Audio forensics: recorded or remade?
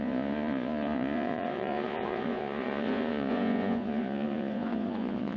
remade